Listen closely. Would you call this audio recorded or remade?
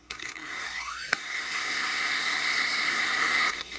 remade